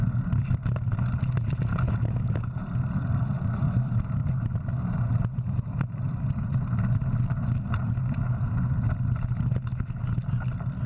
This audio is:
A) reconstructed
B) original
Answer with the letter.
B